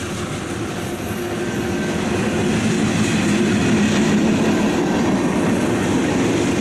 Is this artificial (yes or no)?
no